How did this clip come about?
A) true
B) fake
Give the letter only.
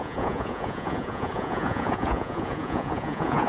B